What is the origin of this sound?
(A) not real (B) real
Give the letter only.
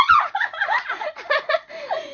A